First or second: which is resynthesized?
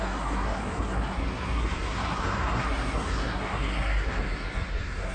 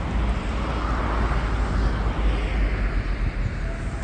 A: first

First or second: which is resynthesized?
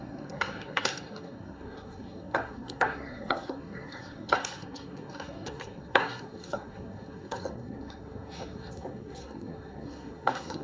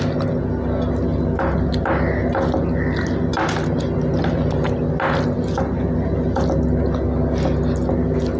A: first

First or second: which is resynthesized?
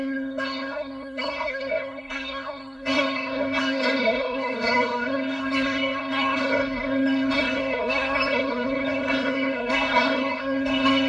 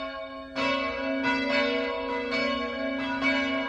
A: first